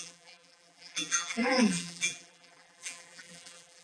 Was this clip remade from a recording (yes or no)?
yes